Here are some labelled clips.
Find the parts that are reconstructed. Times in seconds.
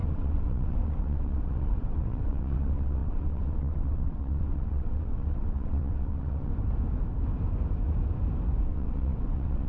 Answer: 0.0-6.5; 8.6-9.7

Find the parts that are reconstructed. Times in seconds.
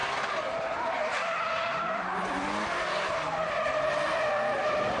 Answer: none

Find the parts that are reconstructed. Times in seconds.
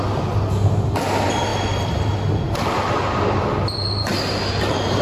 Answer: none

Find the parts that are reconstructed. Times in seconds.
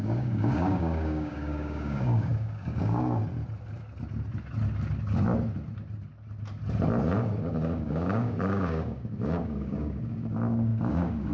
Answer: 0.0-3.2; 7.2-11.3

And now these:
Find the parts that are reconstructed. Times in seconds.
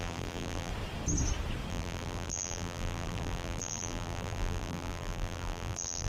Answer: 0.0-0.7; 1.7-6.1